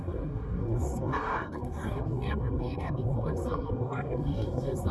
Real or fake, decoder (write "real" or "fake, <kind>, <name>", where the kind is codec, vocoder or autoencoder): fake, codec, SNAC